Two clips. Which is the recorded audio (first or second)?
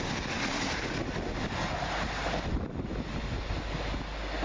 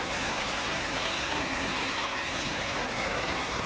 first